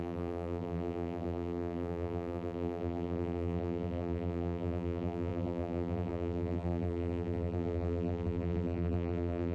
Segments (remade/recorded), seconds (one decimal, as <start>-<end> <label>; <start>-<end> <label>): 0.0-9.5 remade